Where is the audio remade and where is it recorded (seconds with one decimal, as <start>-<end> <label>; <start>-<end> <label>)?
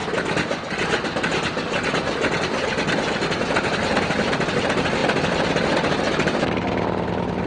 0.0-4.0 recorded; 4.0-7.5 remade